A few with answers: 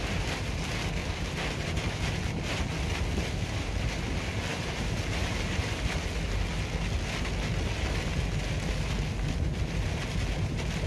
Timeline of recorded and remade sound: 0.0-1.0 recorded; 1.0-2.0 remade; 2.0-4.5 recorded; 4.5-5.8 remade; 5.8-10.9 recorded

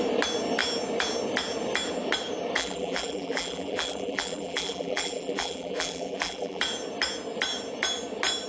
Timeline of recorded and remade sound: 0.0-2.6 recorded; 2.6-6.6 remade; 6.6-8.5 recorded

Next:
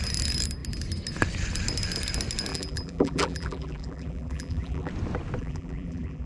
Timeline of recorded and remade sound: 0.0-2.5 recorded; 2.5-4.9 remade; 4.9-5.4 recorded; 5.4-6.3 remade

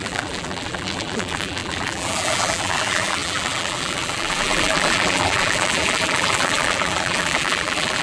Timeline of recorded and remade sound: 0.0-8.0 remade

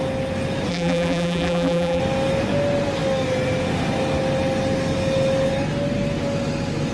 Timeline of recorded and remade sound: 0.0-0.7 recorded; 0.7-2.0 remade; 2.0-6.9 recorded

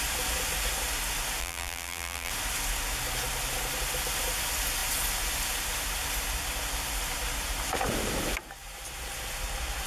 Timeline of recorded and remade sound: 0.0-1.4 recorded; 1.4-2.3 remade; 2.3-9.9 recorded

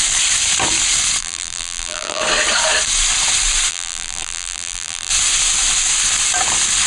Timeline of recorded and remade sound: 0.0-1.2 recorded; 1.2-2.2 remade; 2.2-3.7 recorded; 3.7-5.1 remade; 5.1-6.9 recorded